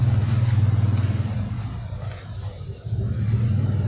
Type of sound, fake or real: real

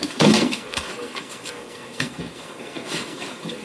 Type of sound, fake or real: fake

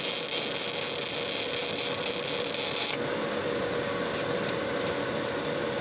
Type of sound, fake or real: real